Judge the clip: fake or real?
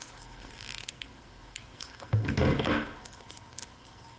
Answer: fake